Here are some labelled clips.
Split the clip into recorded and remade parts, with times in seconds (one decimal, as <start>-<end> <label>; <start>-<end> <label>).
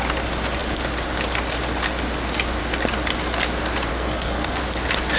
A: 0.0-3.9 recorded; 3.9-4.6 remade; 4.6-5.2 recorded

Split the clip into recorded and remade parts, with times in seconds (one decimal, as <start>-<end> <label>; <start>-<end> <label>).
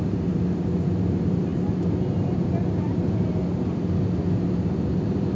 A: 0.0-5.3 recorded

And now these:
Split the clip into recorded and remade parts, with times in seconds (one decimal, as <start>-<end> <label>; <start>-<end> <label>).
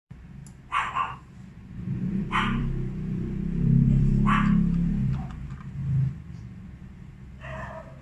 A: 0.0-0.4 remade; 0.4-0.9 recorded; 0.9-4.1 remade; 4.1-4.9 recorded; 4.9-5.8 remade; 5.8-6.4 recorded; 6.4-8.0 remade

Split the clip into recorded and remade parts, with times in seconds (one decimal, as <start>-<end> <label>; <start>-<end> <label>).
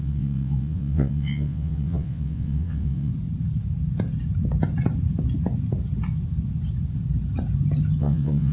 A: 0.0-3.1 remade; 3.1-8.0 recorded; 8.0-8.5 remade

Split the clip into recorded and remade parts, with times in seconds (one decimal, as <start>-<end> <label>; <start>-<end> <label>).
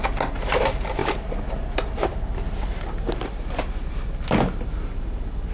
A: 0.0-5.5 recorded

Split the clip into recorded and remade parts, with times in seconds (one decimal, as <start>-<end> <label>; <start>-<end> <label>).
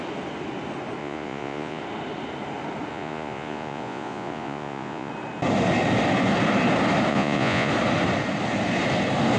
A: 0.0-1.0 recorded; 1.0-1.8 remade; 1.8-2.9 recorded; 2.9-5.1 remade; 5.1-7.1 recorded; 7.1-7.7 remade; 7.7-9.4 recorded